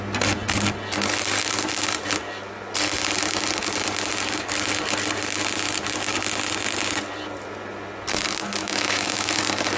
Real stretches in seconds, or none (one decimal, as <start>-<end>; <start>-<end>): 0.0-8.6; 9.4-9.8